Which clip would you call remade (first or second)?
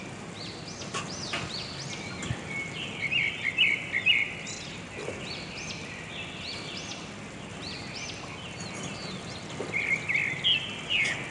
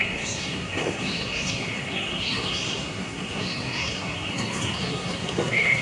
second